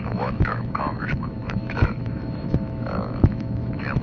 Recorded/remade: remade